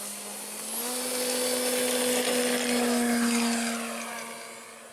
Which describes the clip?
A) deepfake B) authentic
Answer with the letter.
B